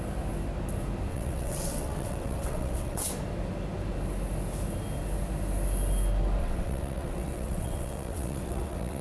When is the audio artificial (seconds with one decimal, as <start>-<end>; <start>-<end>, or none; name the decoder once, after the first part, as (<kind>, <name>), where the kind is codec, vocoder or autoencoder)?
1.1-3.1 (vocoder, WaveNeXt); 6.4-9.0